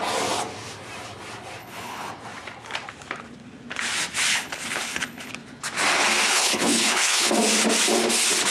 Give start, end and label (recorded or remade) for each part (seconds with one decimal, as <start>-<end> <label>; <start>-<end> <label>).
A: 0.0-1.6 recorded; 1.6-2.1 remade; 2.1-4.3 recorded; 4.3-5.3 remade; 5.3-6.3 recorded; 6.3-7.3 remade; 7.3-8.5 recorded